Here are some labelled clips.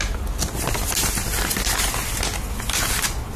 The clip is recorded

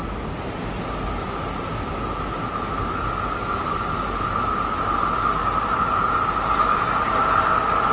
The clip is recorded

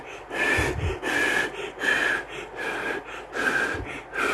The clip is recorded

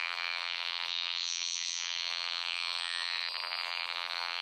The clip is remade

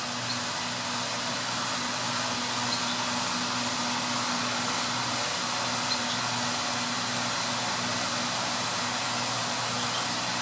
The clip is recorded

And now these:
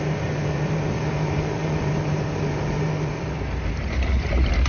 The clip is remade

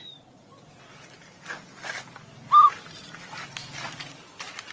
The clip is recorded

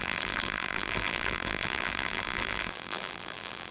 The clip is remade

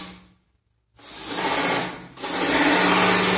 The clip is recorded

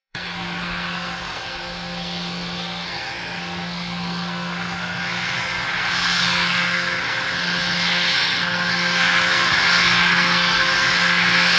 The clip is remade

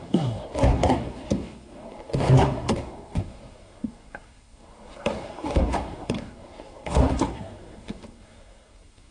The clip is remade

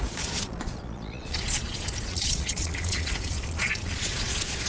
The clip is remade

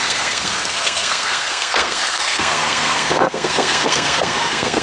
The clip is remade